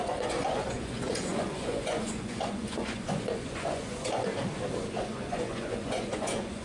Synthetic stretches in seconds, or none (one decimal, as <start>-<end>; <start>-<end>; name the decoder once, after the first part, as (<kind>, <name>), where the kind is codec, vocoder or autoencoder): 0.0-4.3 (vocoder, Vocos); 5.0-6.6